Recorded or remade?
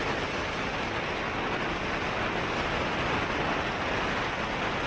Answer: recorded